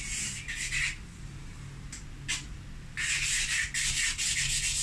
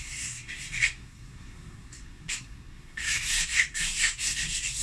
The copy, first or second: second